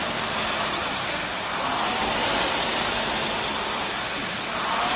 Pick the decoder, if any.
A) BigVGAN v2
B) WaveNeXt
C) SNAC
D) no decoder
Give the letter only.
D